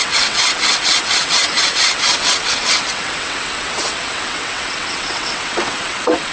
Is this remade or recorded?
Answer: remade